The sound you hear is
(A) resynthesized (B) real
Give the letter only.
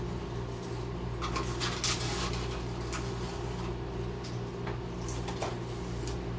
B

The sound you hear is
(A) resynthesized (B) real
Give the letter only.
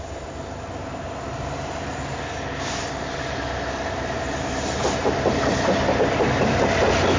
B